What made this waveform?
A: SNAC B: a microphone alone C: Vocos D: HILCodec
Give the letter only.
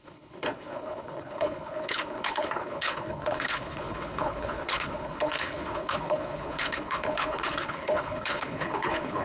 D